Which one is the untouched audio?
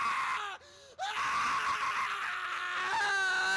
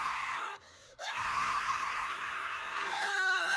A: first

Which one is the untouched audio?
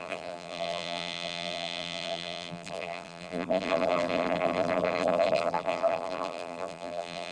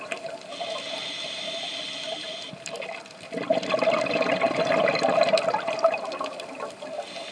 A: second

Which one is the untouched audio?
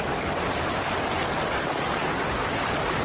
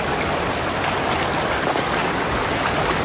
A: first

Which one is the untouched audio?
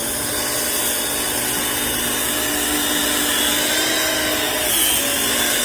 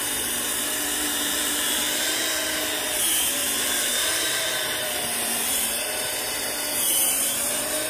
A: first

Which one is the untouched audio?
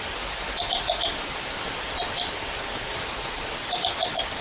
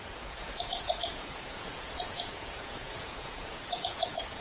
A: first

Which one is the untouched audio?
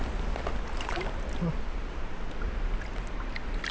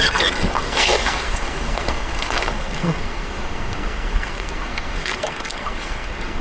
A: first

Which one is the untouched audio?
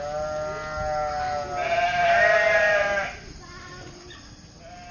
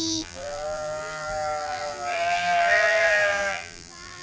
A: first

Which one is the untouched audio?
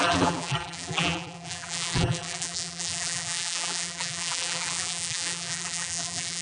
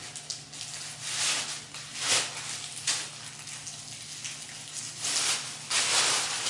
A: second